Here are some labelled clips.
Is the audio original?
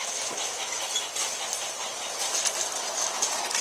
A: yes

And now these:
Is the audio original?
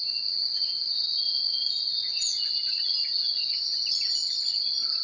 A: yes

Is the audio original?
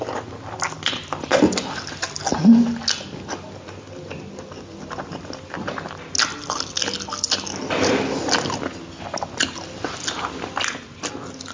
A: yes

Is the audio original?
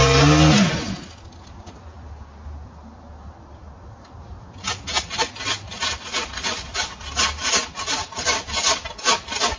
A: yes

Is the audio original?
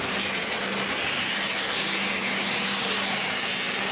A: yes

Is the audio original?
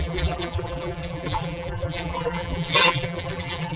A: no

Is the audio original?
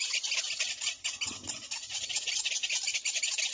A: yes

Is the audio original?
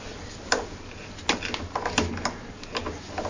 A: yes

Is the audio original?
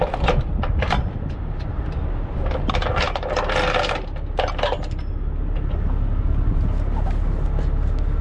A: yes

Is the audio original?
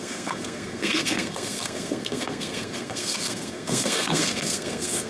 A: no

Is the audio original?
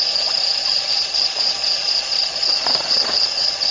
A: no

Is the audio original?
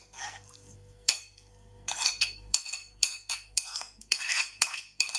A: no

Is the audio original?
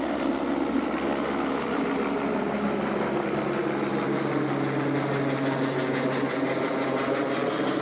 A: yes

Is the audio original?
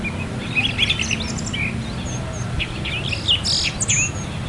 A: yes